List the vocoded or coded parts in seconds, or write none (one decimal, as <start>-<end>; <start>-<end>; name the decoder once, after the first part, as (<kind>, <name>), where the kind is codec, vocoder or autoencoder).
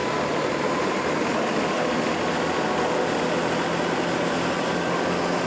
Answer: none